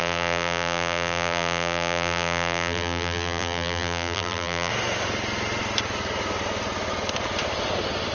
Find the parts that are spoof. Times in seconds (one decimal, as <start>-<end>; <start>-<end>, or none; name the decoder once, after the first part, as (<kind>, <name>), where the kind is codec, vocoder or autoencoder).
0.0-4.7 (vocoder, BigVGAN v2)